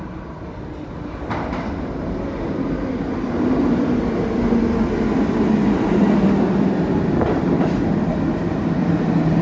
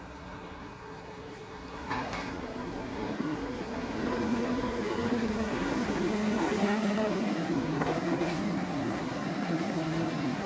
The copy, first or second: second